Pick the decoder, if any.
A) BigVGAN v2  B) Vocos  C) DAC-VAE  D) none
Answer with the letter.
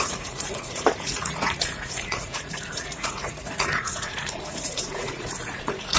B